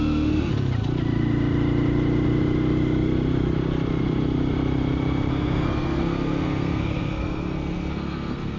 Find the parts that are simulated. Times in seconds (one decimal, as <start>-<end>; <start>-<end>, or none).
0.0-0.5; 5.3-8.6